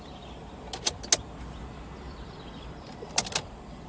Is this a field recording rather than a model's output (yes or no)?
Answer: yes